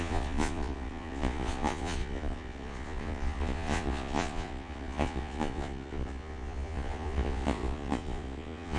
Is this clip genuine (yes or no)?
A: no